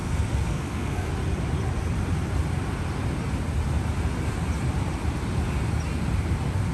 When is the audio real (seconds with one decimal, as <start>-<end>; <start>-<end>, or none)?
1.1-6.7